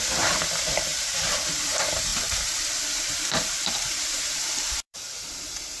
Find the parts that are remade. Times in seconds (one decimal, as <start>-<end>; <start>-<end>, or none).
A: 0.0-5.8